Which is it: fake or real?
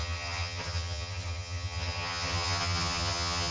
fake